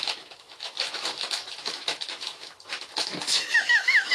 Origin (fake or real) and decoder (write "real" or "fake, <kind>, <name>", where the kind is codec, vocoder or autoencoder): fake, autoencoder, DAC-VAE